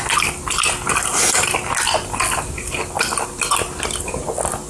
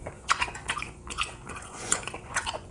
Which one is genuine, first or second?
first